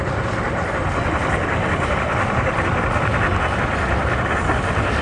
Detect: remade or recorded recorded